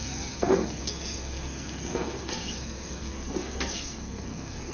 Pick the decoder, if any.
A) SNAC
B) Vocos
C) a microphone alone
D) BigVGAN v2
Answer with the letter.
A